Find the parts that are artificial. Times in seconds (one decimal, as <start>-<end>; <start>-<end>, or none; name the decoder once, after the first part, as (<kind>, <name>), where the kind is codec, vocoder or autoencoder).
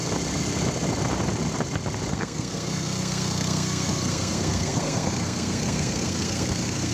2.1-6.9 (codec, SNAC)